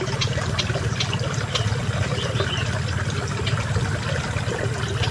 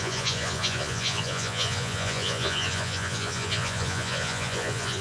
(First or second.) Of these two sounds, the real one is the first